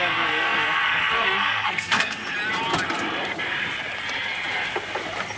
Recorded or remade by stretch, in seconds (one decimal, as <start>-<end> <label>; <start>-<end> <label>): 0.0-2.2 remade; 2.2-5.4 recorded